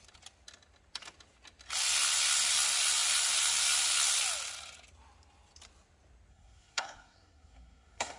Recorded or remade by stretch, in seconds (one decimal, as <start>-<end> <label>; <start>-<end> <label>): 0.0-6.3 recorded; 6.3-8.2 remade